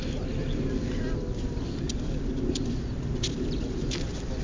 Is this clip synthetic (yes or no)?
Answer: no